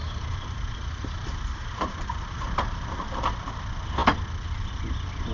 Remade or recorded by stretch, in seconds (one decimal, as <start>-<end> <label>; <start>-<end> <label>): 0.0-3.2 remade; 3.2-5.3 recorded